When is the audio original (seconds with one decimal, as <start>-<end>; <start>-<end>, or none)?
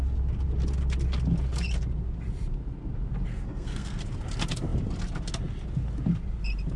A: 0.0-3.3; 4.0-6.8